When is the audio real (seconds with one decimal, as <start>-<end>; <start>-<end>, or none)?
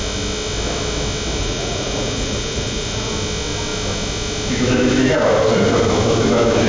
0.0-1.4; 3.1-6.7